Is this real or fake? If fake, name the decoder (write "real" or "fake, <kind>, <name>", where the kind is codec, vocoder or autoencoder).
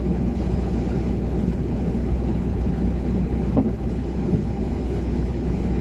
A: fake, codec, HILCodec